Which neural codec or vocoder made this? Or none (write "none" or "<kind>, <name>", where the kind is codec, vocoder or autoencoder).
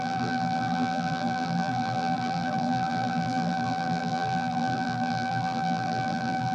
vocoder, BigVGAN v2